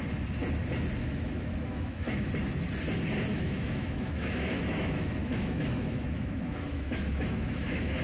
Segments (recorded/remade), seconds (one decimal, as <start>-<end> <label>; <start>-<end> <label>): 0.0-1.0 recorded; 1.0-2.3 remade; 2.3-3.3 recorded; 3.3-8.0 remade